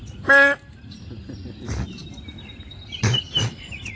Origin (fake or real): real